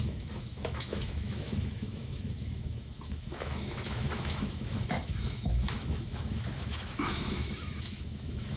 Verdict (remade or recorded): remade